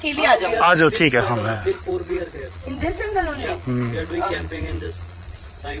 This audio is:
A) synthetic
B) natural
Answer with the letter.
A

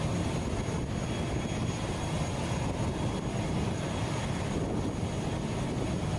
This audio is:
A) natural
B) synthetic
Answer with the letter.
A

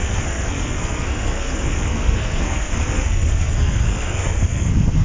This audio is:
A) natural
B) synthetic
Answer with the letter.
B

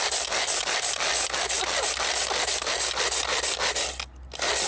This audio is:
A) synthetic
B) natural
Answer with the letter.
B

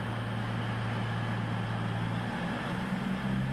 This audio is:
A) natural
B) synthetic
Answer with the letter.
A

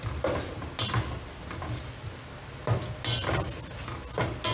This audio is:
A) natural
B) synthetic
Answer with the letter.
A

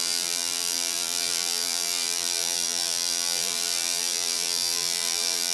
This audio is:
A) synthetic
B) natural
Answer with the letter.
A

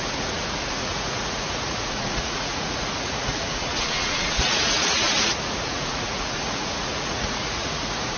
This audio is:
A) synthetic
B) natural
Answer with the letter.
A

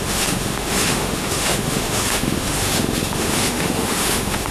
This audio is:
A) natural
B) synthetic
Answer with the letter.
B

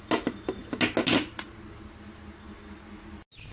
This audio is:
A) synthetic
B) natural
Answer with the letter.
B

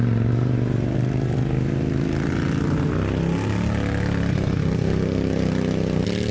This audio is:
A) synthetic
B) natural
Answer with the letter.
B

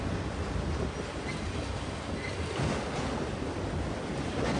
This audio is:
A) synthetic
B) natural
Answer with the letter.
B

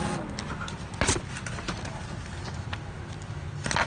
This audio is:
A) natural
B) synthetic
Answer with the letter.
A